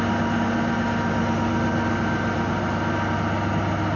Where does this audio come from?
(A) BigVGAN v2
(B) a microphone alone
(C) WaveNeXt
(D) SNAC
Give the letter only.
B